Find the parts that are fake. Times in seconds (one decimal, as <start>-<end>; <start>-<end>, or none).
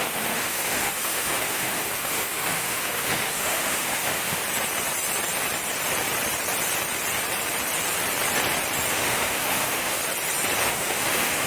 0.0-4.4; 8.9-10.0; 10.7-11.5